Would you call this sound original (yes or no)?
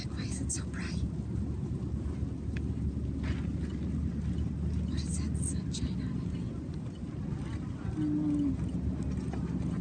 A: yes